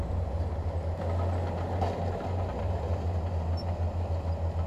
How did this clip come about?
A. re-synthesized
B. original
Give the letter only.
B